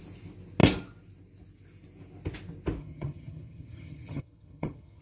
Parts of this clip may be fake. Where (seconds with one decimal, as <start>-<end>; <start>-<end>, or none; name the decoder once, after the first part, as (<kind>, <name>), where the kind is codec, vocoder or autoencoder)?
2.8-5.0 (vocoder, HiFi-GAN)